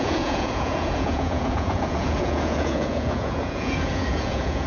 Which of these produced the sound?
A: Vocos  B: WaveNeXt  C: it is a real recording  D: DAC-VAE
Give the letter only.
A